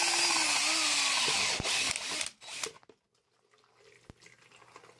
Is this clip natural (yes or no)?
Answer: yes